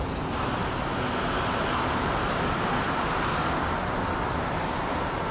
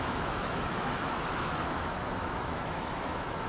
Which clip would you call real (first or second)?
first